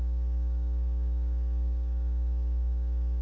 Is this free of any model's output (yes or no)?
no